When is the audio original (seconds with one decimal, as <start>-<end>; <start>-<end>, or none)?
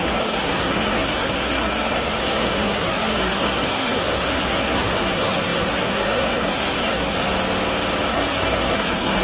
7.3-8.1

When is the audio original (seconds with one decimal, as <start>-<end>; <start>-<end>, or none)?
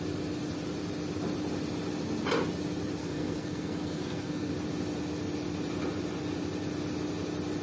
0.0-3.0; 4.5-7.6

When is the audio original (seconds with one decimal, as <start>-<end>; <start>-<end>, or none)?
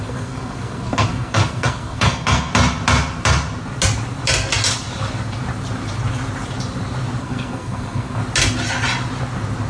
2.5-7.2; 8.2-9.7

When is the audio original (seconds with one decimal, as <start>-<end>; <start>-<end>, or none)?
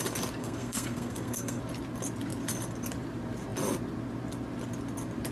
0.0-0.4; 1.6-5.3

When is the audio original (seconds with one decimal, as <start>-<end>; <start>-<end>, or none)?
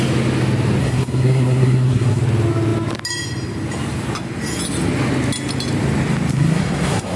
0.0-0.8; 2.2-6.3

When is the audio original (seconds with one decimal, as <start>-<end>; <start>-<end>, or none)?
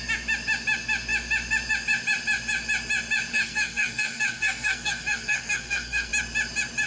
0.0-3.3; 6.1-6.9